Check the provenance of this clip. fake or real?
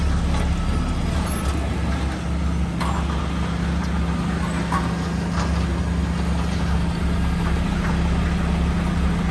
real